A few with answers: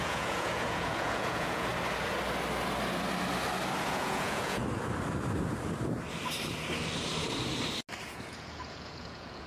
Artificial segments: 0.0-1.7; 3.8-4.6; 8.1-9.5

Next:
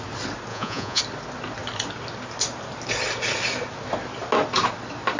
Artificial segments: 0.5-1.0

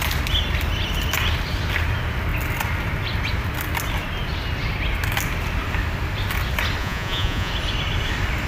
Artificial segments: 6.8-7.5

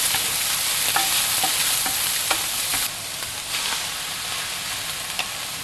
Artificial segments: none

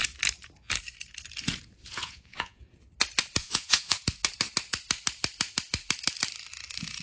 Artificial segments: 1.8-2.6; 3.4-4.0

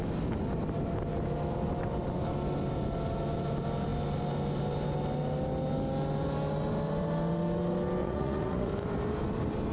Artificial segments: 8.0-8.7